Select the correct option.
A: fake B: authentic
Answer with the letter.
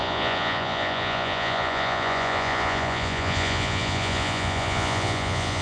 A